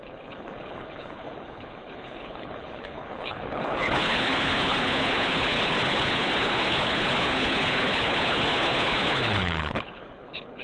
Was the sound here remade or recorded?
remade